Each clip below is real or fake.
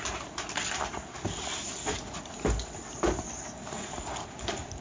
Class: real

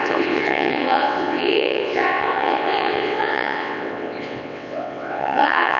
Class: fake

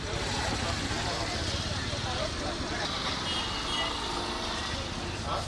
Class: real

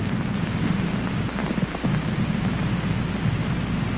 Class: real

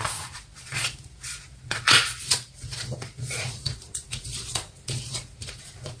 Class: fake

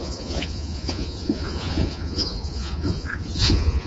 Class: fake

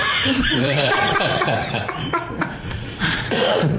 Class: fake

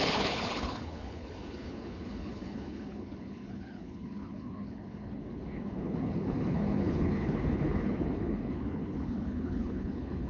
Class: fake